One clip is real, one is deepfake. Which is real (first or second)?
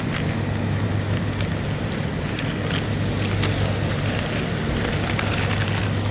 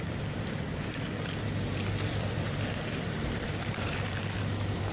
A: first